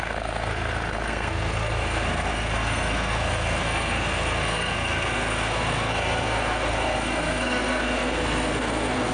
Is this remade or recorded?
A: remade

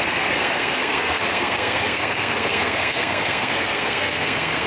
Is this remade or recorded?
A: remade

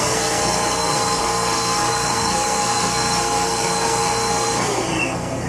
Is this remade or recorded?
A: remade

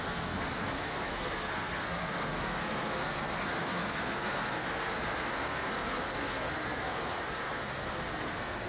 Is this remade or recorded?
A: remade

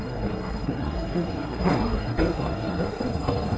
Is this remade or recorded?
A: remade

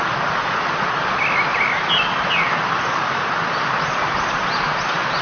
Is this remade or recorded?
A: recorded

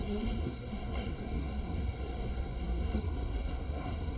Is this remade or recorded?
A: remade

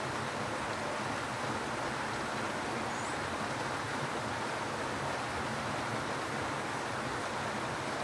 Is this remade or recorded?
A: recorded